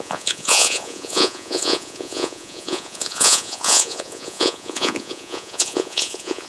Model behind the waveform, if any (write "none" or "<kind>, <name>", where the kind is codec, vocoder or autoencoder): vocoder, Vocos